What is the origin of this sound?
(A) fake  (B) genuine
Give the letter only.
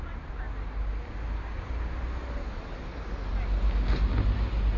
B